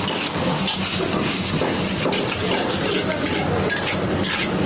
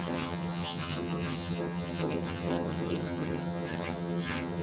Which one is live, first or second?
first